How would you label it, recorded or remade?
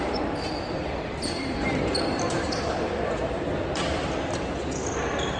remade